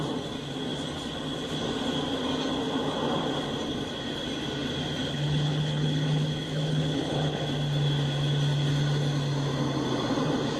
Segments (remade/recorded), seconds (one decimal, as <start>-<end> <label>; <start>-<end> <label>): 0.0-5.0 recorded; 5.0-7.4 remade; 7.4-10.6 recorded